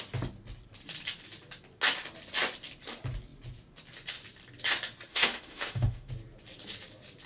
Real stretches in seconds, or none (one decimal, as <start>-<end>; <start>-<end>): 0.0-5.1; 6.1-7.3